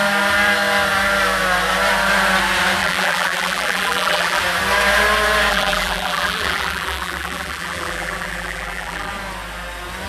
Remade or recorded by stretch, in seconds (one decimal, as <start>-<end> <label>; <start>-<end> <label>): 0.0-2.8 recorded; 2.8-4.4 remade; 4.4-5.5 recorded; 5.5-9.1 remade; 9.1-10.1 recorded